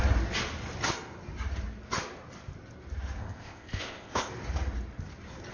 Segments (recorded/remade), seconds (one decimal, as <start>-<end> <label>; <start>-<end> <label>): 0.0-3.2 recorded; 3.2-4.3 remade; 4.3-5.5 recorded